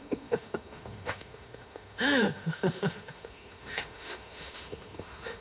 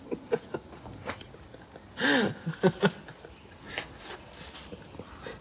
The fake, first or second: first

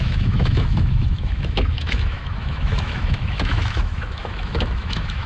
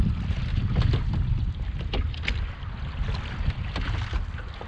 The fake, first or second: first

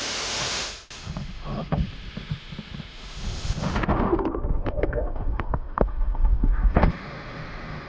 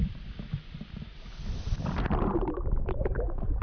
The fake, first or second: first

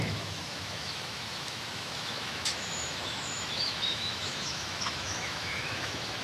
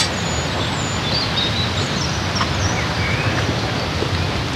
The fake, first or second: first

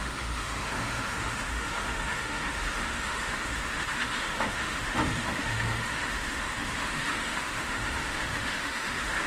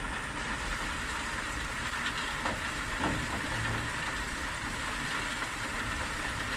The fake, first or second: first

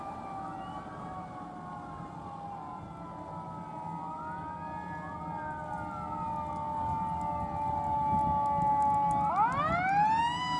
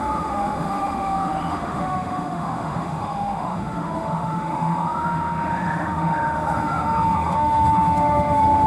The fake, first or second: second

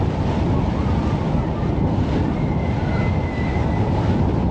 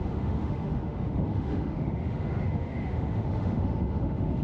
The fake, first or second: second